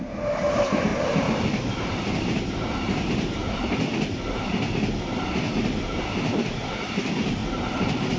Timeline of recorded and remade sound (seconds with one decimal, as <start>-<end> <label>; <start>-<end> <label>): 0.0-3.4 remade; 3.4-6.4 recorded; 6.4-7.4 remade; 7.4-8.2 recorded